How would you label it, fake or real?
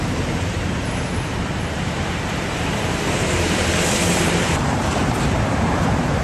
fake